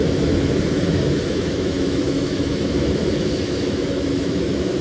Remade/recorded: remade